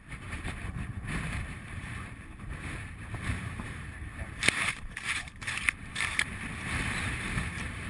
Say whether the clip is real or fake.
fake